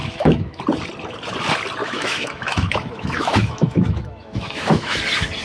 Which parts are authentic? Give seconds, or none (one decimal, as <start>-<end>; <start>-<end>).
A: 0.6-1.8; 5.0-5.4